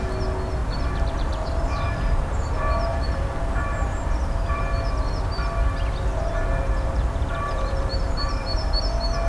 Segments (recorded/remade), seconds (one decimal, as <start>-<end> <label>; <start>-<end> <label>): 0.0-0.6 recorded; 0.6-4.6 remade; 4.6-6.1 recorded; 6.1-8.8 remade; 8.8-9.3 recorded